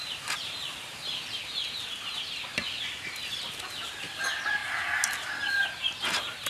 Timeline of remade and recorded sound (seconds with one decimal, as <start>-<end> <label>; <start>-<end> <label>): 0.0-6.5 recorded